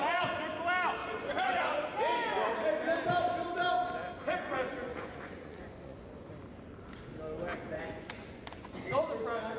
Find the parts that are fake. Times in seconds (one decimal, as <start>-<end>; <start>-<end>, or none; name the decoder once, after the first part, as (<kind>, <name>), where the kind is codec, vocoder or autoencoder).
1.0-1.6 (vocoder, Vocos); 4.2-6.3; 7.6-9.0